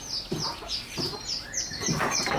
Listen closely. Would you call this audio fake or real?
real